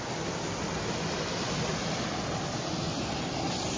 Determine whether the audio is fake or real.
real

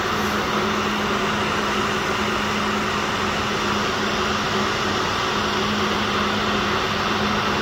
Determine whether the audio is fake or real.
real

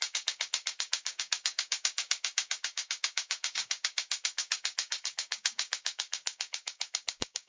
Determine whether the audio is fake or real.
fake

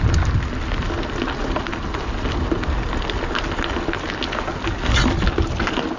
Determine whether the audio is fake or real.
real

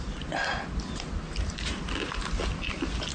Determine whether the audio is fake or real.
real